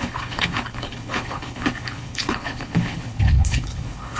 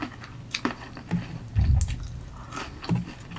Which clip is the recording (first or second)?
second